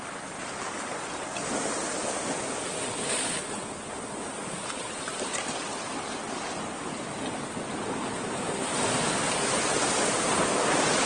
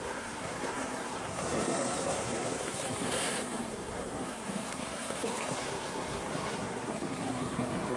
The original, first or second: first